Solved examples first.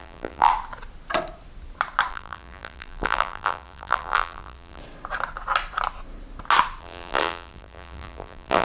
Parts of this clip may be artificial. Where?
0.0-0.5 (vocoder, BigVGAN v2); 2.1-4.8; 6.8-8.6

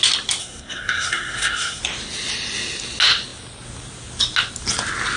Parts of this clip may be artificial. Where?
0.4-1.8 (codec, SNAC)

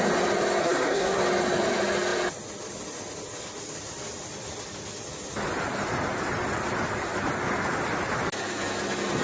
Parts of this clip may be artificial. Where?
0.6-1.2 (codec, SNAC)

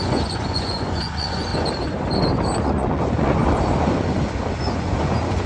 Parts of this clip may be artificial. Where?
0.0-1.5 (vocoder, Vocos); 2.6-3.4; 4.6-5.5